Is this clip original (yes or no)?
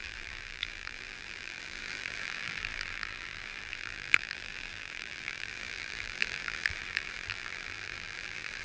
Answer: no